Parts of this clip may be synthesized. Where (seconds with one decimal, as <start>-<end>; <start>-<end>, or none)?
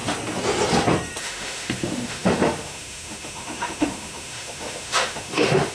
1.2-5.7